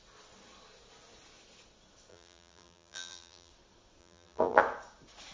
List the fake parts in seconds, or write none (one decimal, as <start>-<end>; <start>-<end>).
2.1-3.5; 4.0-4.6